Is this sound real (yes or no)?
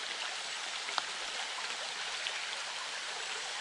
yes